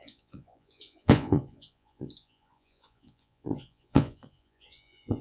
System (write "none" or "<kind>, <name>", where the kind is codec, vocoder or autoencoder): vocoder, Vocos